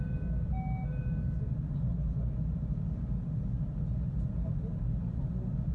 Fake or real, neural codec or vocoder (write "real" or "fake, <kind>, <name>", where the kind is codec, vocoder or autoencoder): real